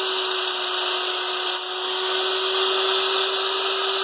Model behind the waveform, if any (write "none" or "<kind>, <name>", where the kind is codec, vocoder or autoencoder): none